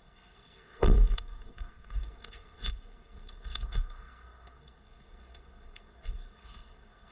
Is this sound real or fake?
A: fake